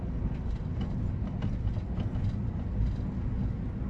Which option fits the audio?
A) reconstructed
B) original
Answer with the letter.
B